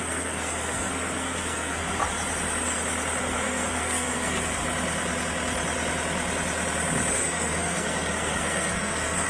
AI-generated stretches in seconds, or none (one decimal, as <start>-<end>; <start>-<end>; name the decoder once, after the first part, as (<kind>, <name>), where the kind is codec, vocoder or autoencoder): 0.0-2.0 (codec, SNAC); 3.2-4.6; 7.1-9.3